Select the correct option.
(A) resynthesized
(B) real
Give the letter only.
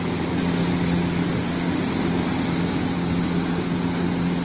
B